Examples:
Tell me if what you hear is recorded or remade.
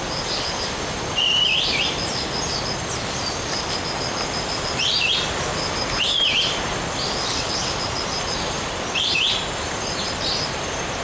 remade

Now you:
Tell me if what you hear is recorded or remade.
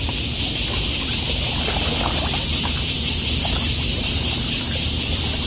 recorded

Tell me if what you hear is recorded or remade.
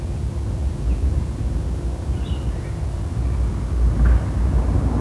recorded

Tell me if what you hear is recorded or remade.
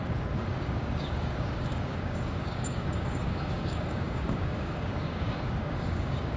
remade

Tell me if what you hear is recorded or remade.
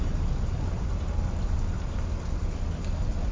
recorded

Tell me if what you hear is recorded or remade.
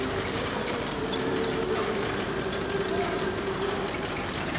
remade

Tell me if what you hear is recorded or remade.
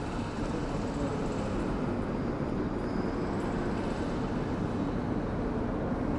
recorded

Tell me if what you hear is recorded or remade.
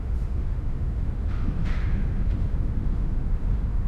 remade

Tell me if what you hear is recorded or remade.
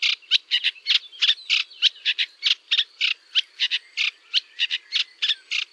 recorded